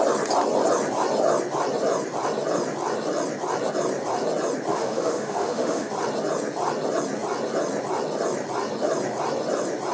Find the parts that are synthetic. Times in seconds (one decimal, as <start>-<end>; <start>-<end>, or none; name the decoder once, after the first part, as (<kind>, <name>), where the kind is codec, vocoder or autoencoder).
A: 4.7-5.9 (autoencoder, DAC-VAE)